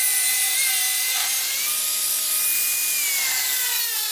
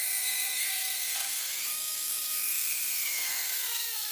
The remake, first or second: second